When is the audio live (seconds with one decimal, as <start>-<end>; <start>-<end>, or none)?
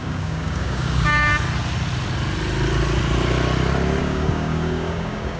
1.3-4.0